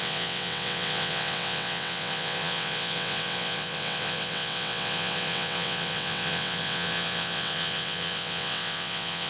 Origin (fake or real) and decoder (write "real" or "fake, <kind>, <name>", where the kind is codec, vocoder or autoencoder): fake, vocoder, WaveNeXt